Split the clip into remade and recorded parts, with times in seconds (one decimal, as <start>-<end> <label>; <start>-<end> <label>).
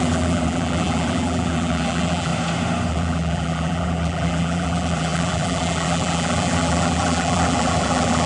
0.0-2.3 remade; 2.3-2.9 recorded; 2.9-8.3 remade